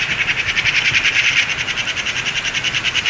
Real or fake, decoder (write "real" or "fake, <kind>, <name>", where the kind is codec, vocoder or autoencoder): real